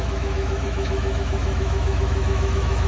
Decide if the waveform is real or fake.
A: fake